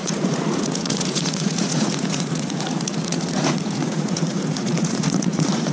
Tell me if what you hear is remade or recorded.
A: remade